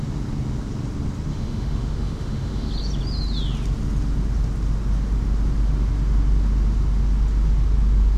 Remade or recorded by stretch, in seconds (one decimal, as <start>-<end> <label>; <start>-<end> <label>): 0.0-1.3 recorded; 1.3-2.7 remade; 2.7-8.2 recorded